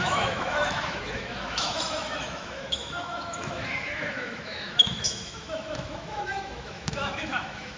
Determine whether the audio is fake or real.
fake